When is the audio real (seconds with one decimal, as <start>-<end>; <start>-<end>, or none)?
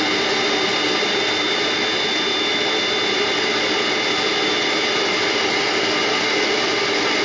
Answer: 0.0-7.2